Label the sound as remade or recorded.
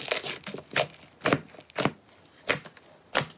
recorded